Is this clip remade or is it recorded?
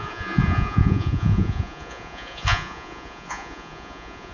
remade